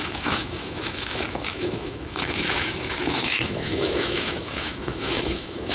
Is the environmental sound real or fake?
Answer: fake